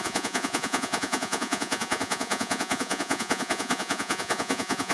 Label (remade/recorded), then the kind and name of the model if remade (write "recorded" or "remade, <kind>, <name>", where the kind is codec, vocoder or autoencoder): remade, vocoder, Vocos